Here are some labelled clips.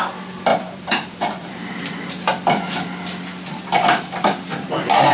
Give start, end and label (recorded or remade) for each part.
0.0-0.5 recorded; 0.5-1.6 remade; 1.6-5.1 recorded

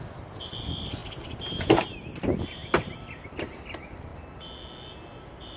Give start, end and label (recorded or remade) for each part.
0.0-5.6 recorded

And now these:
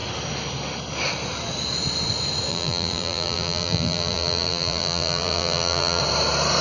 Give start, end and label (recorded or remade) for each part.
0.0-2.5 recorded; 2.5-6.0 remade; 6.0-6.6 recorded

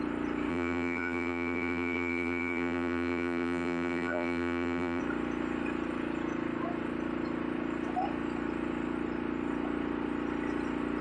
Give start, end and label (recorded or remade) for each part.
0.0-0.5 recorded; 0.5-5.0 remade; 5.0-11.0 recorded